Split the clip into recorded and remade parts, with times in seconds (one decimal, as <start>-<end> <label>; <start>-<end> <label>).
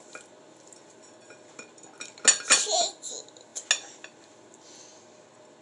0.0-5.6 recorded